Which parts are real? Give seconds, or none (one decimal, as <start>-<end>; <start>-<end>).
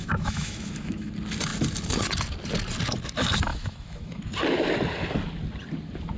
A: 1.1-3.5; 4.2-6.2